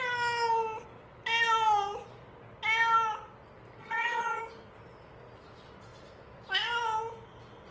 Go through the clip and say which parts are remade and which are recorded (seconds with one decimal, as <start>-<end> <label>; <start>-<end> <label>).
0.0-3.8 recorded; 3.8-4.4 remade; 4.4-7.7 recorded